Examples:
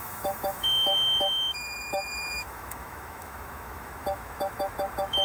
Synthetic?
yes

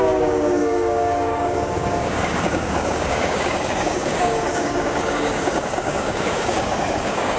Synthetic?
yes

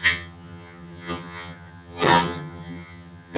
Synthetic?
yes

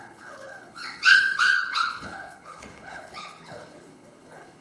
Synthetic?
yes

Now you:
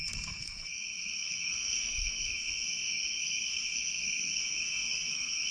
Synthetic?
yes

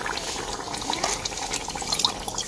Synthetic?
no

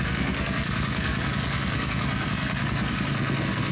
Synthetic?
yes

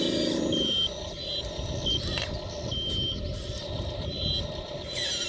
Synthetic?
yes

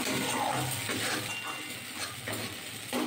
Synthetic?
no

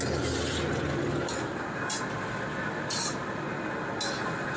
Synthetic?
no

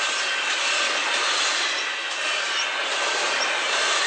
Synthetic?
no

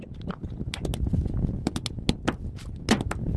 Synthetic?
no